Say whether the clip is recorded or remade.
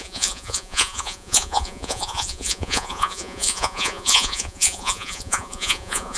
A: remade